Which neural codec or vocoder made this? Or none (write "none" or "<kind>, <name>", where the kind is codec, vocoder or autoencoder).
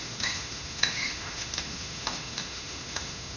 autoencoder, DAC-VAE